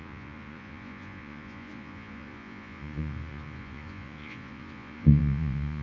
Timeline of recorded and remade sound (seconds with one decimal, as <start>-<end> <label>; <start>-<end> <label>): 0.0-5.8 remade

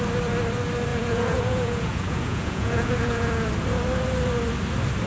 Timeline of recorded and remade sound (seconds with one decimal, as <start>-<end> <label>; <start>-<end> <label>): 0.0-0.9 recorded; 0.9-3.5 remade; 3.5-5.1 recorded

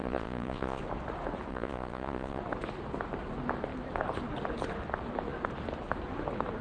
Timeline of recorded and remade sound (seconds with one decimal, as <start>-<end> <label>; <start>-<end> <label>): 0.0-0.8 remade; 0.8-1.5 recorded; 1.5-2.4 remade; 2.4-6.6 recorded

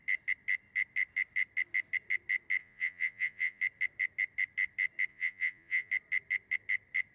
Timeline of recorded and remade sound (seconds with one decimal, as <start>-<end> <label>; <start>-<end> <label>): 0.0-2.6 recorded; 2.6-3.6 remade; 3.6-5.1 recorded; 5.1-5.9 remade; 5.9-7.1 recorded

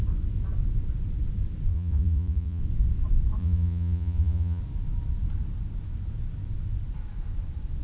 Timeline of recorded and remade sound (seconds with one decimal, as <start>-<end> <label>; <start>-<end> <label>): 0.0-1.7 recorded; 1.7-2.6 remade; 2.6-3.4 recorded; 3.4-4.6 remade; 4.6-7.8 recorded

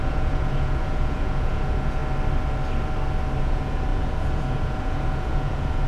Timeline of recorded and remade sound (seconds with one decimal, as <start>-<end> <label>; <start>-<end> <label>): 0.0-2.0 remade; 2.0-3.4 recorded; 3.4-5.9 remade

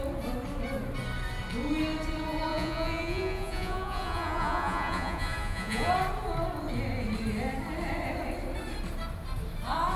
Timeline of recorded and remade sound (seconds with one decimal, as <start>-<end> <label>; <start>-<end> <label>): 0.0-2.5 recorded; 2.5-5.9 remade; 5.9-10.0 recorded

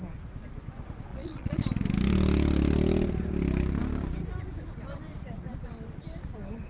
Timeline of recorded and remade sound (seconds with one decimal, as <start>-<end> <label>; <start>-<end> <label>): 0.0-1.1 recorded; 1.1-1.6 remade; 1.6-6.7 recorded